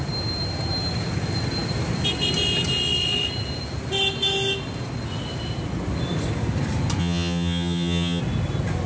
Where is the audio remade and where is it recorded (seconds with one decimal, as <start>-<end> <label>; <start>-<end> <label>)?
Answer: 0.0-7.0 recorded; 7.0-8.2 remade; 8.2-8.9 recorded